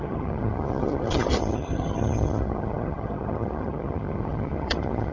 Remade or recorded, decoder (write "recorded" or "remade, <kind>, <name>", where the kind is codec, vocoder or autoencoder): remade, vocoder, HiFi-GAN